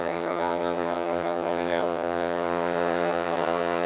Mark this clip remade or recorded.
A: remade